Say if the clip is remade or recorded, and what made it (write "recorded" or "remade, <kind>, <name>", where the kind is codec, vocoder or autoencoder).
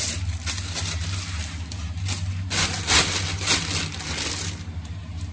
recorded